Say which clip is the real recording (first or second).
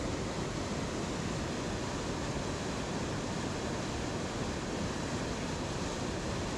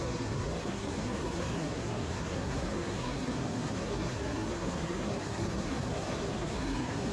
first